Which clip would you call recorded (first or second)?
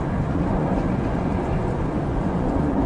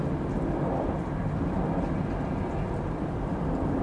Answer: second